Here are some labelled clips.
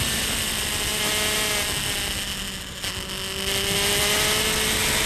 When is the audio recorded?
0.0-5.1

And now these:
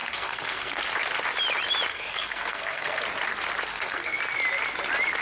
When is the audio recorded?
0.9-1.9; 3.0-3.7; 4.2-5.2

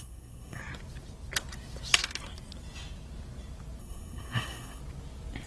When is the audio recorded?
0.6-3.8; 4.8-5.5